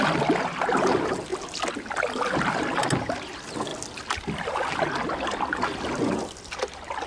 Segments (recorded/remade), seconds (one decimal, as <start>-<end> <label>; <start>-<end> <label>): 0.0-7.1 recorded

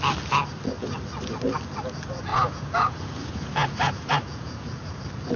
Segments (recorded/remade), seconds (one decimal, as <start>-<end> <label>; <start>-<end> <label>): 0.0-2.3 recorded; 2.3-5.0 remade; 5.0-5.4 recorded

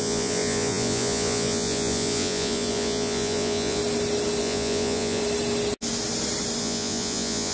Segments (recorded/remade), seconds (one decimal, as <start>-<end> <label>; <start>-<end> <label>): 0.0-3.8 remade; 3.8-4.4 recorded; 4.4-5.2 remade; 5.2-6.6 recorded; 6.6-7.5 remade

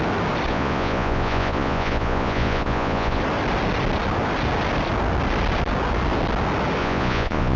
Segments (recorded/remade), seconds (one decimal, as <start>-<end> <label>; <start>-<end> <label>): 0.0-0.5 recorded; 0.5-3.2 remade; 3.2-6.8 recorded; 6.8-7.6 remade

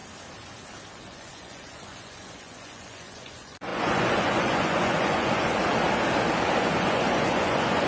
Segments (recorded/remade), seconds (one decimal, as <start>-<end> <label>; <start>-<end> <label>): 0.0-0.9 recorded; 0.9-5.6 remade; 5.6-6.6 recorded; 6.6-7.9 remade

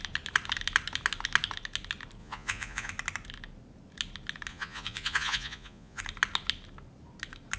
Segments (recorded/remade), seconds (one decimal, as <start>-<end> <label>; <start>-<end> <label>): 0.0-2.2 recorded; 2.2-2.9 remade; 2.9-4.5 recorded; 4.5-6.0 remade; 6.0-7.6 recorded